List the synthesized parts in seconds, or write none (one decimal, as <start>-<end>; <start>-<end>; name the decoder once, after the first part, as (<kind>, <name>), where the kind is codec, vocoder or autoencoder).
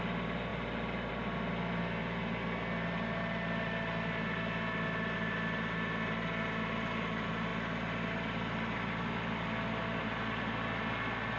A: none